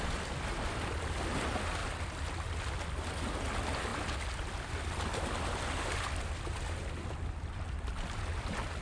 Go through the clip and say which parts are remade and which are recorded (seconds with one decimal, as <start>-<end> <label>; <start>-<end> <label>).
0.0-8.8 recorded